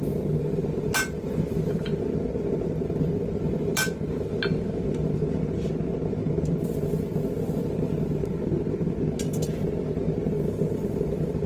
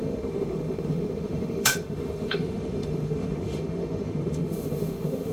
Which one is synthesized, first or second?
second